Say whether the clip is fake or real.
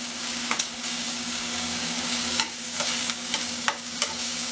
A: fake